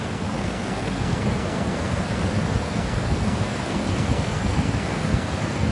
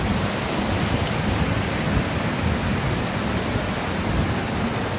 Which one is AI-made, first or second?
first